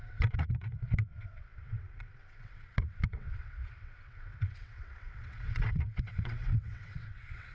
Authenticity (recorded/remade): remade